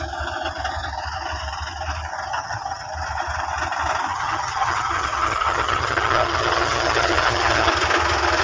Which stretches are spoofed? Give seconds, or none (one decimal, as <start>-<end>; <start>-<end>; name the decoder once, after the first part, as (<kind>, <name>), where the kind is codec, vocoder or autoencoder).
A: 2.3-2.9 (vocoder, HiFi-GAN); 4.1-7.7

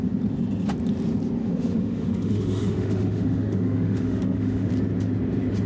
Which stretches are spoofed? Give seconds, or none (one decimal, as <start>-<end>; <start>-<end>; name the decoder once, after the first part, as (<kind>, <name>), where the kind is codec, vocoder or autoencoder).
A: 1.4-4.7 (autoencoder, DAC-VAE)

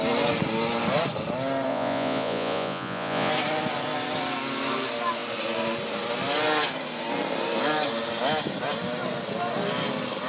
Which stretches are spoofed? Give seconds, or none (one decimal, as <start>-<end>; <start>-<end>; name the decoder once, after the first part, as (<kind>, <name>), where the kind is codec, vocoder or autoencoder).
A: 1.7-3.3 (vocoder, Vocos)

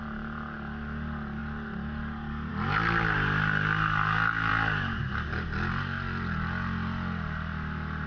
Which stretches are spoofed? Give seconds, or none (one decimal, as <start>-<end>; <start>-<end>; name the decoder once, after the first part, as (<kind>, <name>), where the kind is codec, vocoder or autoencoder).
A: none

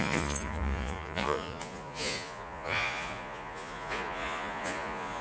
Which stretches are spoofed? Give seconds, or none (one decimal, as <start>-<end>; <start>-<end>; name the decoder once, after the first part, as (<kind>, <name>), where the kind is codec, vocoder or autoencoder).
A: 0.0-5.2 (vocoder, Vocos)